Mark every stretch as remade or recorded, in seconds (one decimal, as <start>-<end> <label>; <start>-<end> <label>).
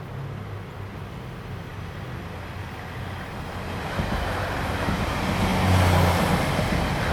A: 0.0-7.1 recorded